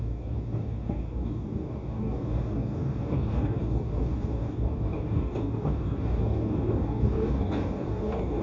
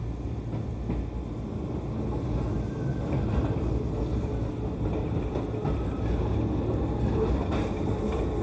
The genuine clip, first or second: second